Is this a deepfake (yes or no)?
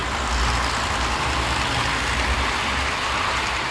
no